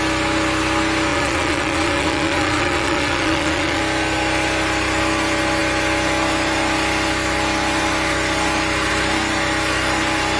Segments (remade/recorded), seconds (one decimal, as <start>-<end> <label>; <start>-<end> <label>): 0.0-1.1 recorded; 1.1-3.8 remade; 3.8-10.4 recorded